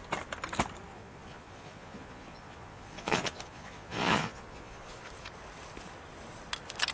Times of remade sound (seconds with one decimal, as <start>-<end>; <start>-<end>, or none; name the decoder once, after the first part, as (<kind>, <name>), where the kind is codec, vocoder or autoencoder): 0.9-5.0 (vocoder, Vocos)